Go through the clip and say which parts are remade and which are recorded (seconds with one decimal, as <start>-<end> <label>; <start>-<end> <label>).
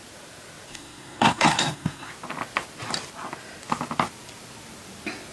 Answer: 0.0-0.7 recorded; 0.7-2.1 remade; 2.1-5.3 recorded